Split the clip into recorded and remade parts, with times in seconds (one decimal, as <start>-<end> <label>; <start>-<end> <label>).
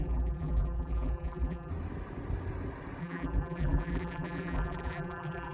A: 0.0-1.7 remade; 1.7-3.0 recorded; 3.0-5.5 remade